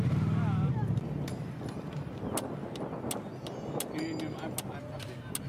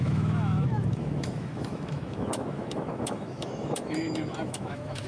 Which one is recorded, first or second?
first